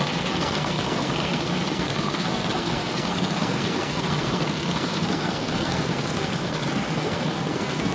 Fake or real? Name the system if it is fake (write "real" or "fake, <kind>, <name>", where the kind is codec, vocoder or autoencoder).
fake, codec, SNAC